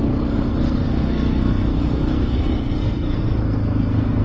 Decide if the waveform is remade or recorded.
remade